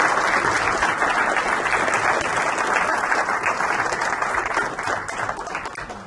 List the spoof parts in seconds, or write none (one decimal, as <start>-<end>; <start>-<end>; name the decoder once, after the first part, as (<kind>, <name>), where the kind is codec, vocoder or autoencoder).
2.9-4.5 (vocoder, BigVGAN v2)